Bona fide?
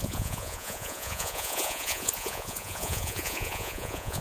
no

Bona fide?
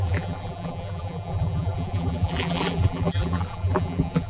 no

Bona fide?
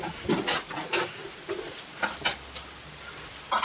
yes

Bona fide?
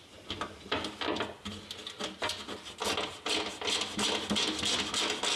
yes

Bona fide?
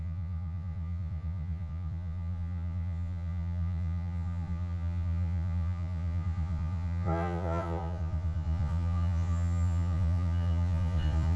no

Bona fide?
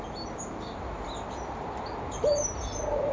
no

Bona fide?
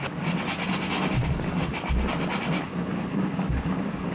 yes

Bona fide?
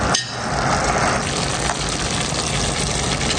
yes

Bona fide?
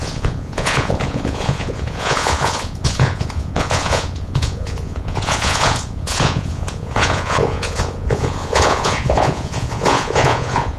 no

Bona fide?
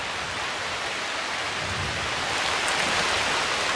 yes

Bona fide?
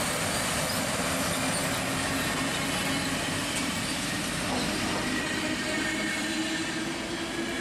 yes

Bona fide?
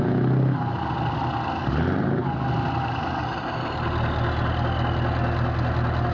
yes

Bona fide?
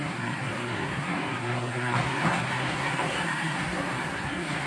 no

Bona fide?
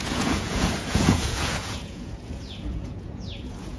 no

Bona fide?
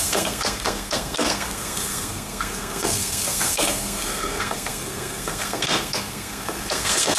no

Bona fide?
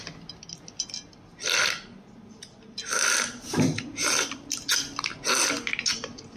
yes